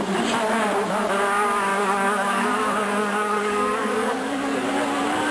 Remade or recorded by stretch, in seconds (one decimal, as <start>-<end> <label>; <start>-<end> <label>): 0.0-1.7 recorded; 1.7-4.7 remade; 4.7-5.3 recorded